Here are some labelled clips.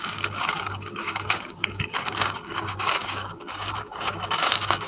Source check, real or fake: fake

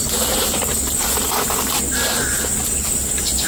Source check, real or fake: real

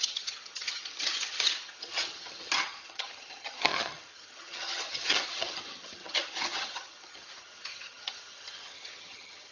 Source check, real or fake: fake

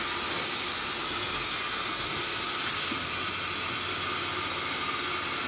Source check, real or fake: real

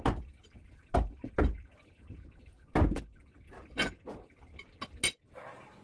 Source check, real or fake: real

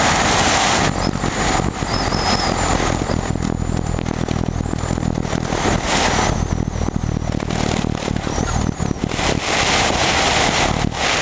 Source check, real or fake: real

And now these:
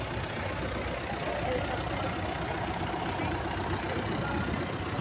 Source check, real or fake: real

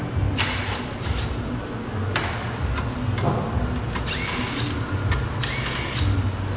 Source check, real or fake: real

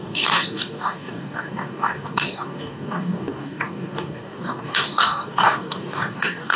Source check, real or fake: fake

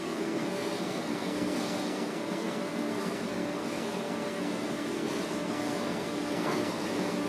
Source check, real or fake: fake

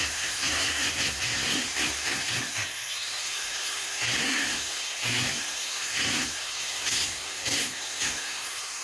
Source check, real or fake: fake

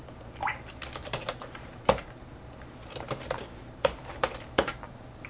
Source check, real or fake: fake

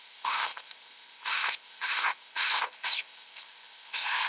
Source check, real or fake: fake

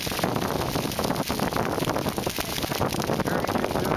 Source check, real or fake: real